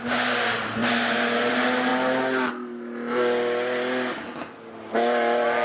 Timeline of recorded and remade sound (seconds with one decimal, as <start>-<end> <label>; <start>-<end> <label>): 0.0-5.6 recorded